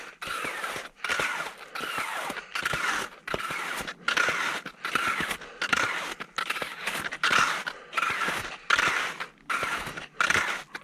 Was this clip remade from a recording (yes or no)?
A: no